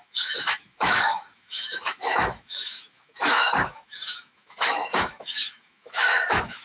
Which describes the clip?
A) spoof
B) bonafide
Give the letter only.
A